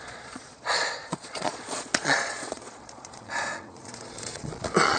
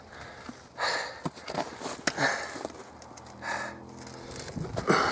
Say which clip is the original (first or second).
second